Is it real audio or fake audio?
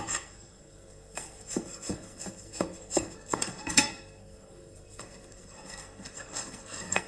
fake